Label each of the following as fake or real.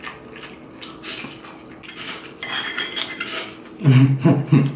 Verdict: real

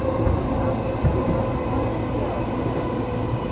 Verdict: real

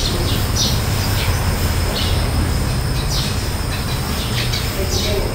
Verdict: real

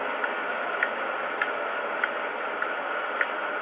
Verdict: real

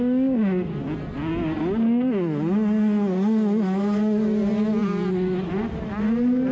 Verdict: real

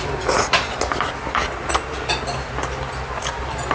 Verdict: real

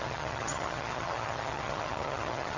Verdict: fake